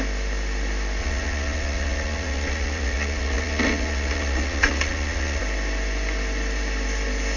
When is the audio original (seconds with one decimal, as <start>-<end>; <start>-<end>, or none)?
0.0-1.0; 5.4-7.4